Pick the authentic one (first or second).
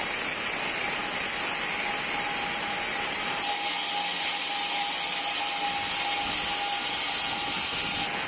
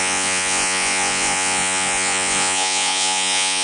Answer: first